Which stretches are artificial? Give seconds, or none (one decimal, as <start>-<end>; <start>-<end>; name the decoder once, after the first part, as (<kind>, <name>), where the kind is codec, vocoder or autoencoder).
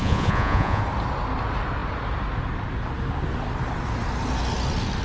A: 0.0-0.8 (vocoder, Vocos)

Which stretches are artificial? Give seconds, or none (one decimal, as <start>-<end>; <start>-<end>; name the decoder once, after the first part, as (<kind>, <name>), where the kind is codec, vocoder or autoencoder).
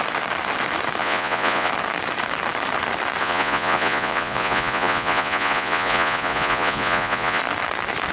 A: 1.0-1.7 (vocoder, Vocos); 3.2-7.4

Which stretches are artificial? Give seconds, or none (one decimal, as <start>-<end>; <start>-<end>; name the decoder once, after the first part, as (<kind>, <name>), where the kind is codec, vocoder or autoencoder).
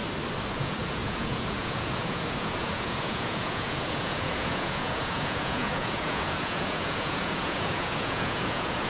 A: 0.5-8.9 (vocoder, Vocos)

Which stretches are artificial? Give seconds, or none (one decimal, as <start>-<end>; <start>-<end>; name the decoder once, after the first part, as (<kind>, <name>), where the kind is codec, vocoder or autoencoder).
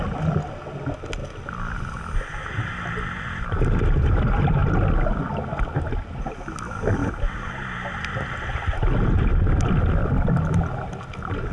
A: none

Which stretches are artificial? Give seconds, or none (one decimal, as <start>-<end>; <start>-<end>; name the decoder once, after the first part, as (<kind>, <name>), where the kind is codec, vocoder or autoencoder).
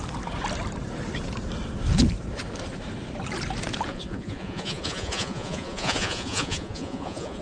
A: 3.9-7.4 (vocoder, Vocos)